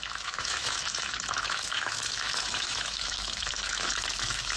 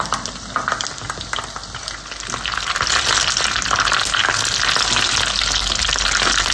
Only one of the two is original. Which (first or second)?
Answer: second